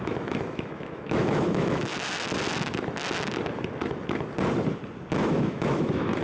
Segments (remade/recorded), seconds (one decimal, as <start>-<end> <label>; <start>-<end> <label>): 0.0-1.9 remade; 1.9-5.1 recorded; 5.1-6.2 remade